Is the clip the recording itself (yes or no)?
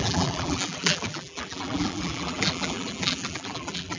no